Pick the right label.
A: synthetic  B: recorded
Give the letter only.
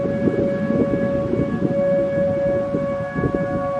B